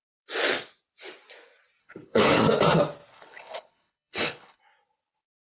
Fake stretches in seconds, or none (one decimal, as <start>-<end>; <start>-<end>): 1.8-2.4; 3.1-4.6